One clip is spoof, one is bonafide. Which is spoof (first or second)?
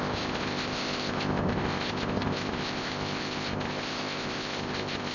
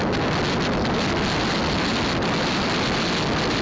first